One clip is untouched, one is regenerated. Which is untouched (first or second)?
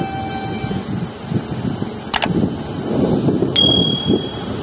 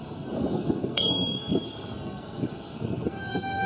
first